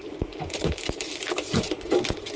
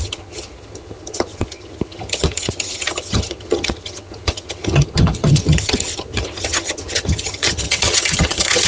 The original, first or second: first